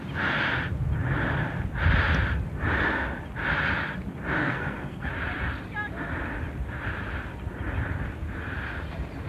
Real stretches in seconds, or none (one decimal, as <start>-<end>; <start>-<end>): 0.0-4.4; 5.1-9.3